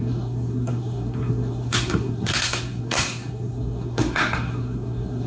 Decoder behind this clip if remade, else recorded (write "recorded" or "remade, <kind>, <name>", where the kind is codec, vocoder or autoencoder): remade, codec, SNAC